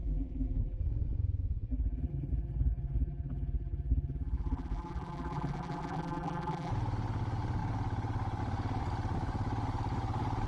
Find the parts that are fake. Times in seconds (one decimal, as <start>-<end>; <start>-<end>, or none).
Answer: 0.0-0.8; 1.7-6.7